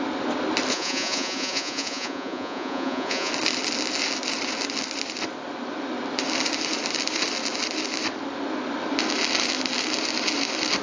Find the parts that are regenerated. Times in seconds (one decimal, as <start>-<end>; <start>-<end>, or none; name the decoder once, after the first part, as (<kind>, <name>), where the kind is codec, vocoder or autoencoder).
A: 0.7-3.3 (vocoder, Vocos)